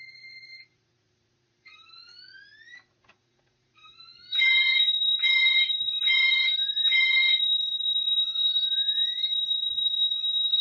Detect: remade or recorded remade